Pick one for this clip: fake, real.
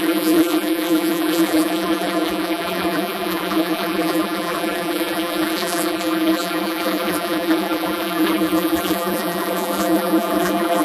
fake